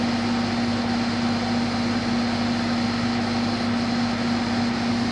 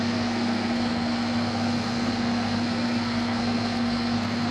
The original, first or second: first